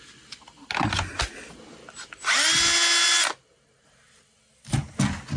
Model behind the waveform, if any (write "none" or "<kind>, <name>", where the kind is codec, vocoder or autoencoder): none